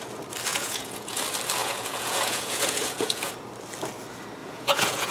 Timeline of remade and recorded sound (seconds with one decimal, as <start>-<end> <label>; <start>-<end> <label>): 0.0-0.5 recorded; 0.5-1.2 remade; 1.2-1.6 recorded; 1.6-3.3 remade; 3.3-4.4 recorded; 4.4-5.1 remade